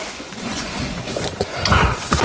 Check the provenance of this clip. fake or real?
fake